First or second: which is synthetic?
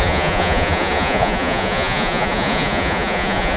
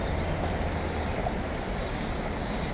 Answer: first